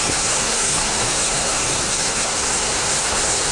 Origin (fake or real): fake